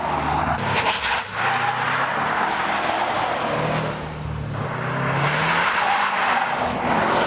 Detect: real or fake real